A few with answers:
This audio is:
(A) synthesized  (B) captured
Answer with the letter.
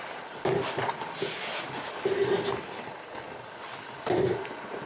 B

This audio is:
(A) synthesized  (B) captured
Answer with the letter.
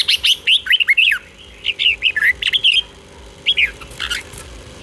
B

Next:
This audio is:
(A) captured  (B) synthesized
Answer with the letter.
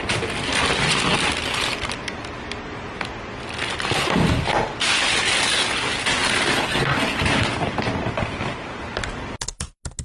A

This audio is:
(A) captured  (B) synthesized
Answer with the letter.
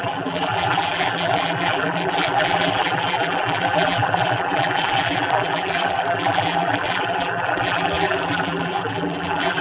B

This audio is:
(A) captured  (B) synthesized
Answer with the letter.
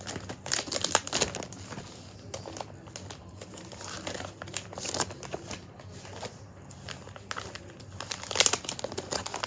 A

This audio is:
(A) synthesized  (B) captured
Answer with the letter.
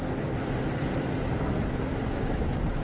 B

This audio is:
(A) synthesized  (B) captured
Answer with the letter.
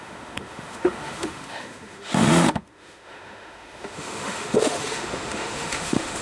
A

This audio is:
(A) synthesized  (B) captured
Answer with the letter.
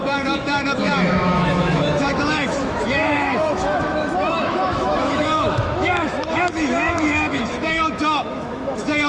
A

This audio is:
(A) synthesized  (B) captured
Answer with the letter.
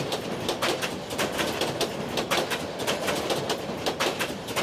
A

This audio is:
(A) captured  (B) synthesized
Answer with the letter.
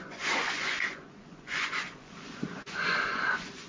B